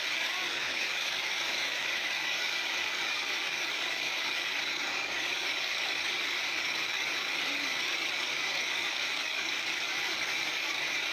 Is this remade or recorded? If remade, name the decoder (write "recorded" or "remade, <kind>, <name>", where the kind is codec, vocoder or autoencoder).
remade, codec, DAC